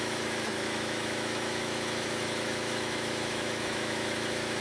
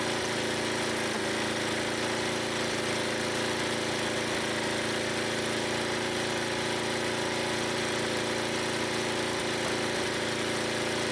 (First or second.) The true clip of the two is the second